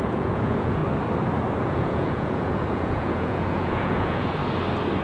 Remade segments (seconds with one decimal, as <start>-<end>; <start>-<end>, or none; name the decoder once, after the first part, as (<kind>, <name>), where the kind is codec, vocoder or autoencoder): 0.0-0.8 (vocoder, Vocos); 1.6-4.4